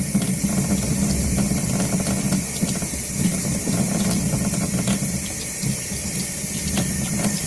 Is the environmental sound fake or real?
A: fake